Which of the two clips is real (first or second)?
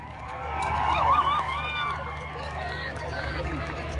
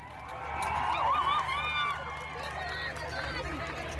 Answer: second